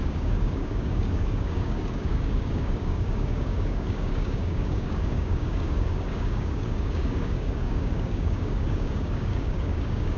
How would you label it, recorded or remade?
remade